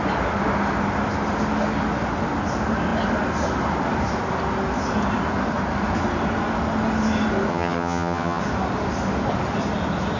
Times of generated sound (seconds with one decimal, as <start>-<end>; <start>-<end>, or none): 7.5-8.4